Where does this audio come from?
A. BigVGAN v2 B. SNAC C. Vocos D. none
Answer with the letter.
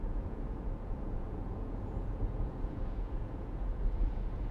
C